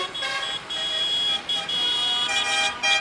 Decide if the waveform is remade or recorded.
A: remade